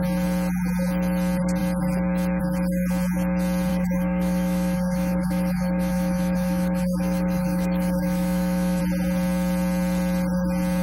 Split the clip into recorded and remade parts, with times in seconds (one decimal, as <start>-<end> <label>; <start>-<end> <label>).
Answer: 0.0-3.7 recorded; 3.7-8.8 remade; 8.8-10.8 recorded